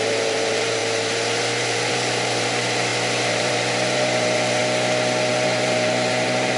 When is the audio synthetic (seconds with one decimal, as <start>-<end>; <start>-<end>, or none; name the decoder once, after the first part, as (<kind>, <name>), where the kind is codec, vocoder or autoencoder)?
0.0-4.6 (vocoder, BigVGAN v2); 5.3-6.6